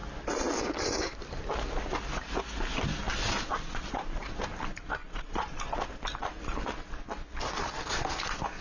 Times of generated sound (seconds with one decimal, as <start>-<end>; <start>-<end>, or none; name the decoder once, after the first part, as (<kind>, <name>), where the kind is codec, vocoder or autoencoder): 3.1-4.4 (vocoder, Vocos); 5.0-5.6